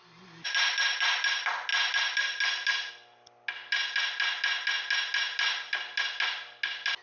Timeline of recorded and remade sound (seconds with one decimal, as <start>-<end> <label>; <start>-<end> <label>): 0.0-7.0 recorded

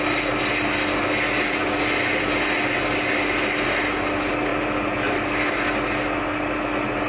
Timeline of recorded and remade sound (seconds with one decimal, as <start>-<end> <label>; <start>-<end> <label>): 0.0-7.1 recorded

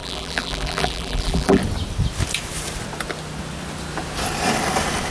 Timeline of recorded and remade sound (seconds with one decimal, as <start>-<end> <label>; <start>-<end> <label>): 0.0-1.6 remade; 1.6-5.1 recorded

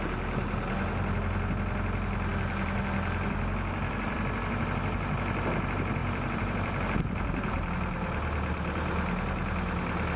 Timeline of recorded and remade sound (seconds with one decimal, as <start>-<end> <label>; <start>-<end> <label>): 0.0-2.3 recorded; 2.3-4.5 remade; 4.5-6.0 recorded; 6.0-7.7 remade; 7.7-10.2 recorded

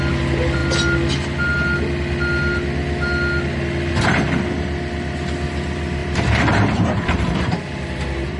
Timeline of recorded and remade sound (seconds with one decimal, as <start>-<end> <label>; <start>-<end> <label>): 0.0-6.0 recorded; 6.0-8.4 remade

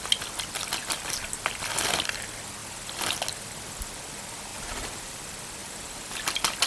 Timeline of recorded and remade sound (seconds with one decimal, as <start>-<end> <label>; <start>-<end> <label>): 0.0-4.5 recorded; 4.5-5.1 remade; 5.1-5.6 recorded; 5.6-6.2 remade; 6.2-6.7 recorded